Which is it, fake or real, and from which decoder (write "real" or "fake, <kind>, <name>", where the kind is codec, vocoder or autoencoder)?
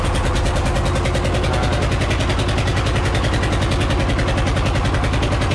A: real